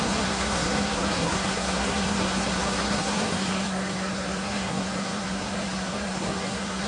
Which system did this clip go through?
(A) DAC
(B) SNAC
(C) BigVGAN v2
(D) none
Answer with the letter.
B